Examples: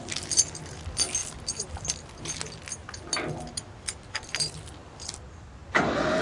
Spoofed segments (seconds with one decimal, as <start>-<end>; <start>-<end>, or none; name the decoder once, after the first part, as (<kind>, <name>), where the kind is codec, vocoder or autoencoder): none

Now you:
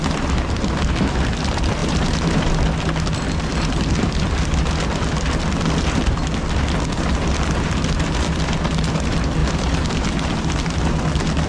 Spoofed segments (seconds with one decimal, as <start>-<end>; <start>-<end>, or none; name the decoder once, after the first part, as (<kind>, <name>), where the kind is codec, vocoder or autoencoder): 1.8-2.5 (vocoder, BigVGAN v2); 9.4-10.8

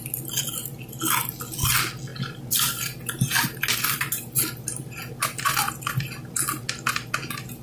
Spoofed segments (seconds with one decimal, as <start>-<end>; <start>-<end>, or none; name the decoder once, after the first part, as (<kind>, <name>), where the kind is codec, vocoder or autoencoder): none

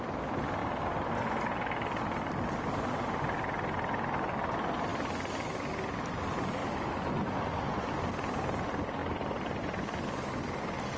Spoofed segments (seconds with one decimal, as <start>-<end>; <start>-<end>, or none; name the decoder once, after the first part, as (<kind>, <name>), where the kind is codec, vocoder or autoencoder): 4.9-5.7 (autoencoder, DAC-VAE)